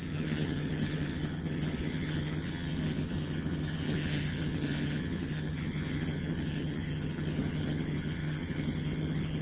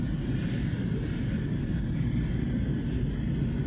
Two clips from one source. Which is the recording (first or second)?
second